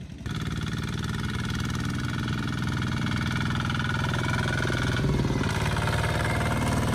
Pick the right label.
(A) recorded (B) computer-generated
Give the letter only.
A